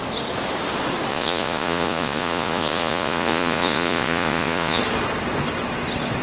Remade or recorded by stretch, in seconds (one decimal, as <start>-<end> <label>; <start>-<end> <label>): 0.0-1.1 recorded; 1.1-4.8 remade; 4.8-6.2 recorded